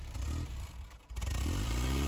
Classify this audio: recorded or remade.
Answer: remade